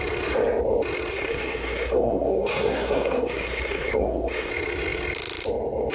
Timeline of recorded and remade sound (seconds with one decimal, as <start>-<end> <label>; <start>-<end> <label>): 0.0-1.1 recorded; 1.1-4.5 remade; 4.5-5.9 recorded